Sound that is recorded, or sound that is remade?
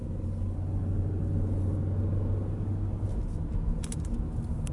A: recorded